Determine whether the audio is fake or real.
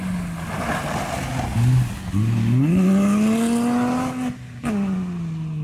real